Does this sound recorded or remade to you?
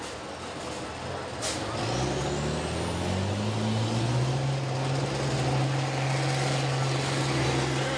recorded